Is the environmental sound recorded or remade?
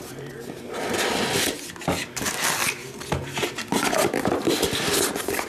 recorded